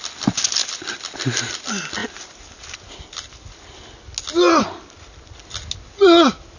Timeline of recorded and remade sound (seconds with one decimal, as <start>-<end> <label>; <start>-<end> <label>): 0.0-6.6 recorded